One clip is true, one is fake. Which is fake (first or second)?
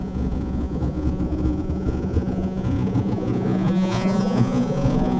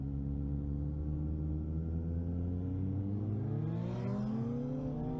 first